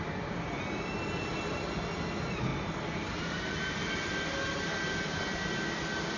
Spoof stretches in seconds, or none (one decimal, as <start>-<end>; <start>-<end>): none